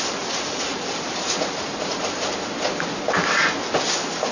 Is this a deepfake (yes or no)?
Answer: no